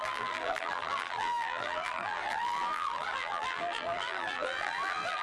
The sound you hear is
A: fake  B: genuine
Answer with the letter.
A